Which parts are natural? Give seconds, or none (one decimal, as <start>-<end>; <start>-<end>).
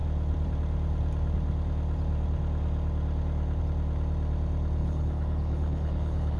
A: 0.0-4.8